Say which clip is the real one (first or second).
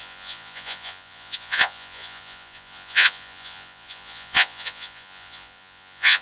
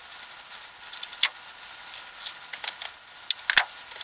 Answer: second